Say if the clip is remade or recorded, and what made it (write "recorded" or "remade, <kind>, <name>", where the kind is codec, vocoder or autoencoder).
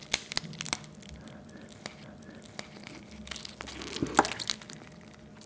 recorded